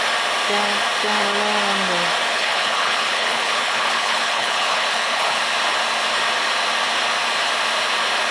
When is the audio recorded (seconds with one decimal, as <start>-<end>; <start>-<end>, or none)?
0.0-2.3; 5.4-8.3